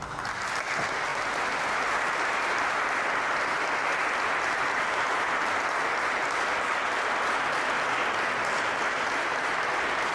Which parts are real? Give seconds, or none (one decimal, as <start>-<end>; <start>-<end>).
0.0-10.1